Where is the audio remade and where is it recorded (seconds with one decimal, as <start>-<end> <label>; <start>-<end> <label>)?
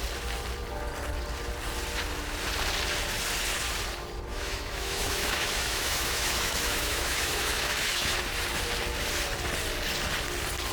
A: 0.0-4.3 recorded; 4.3-8.2 remade; 8.2-10.7 recorded